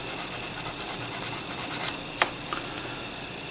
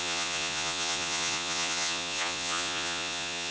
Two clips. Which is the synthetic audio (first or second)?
second